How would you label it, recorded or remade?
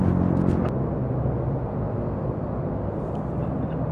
recorded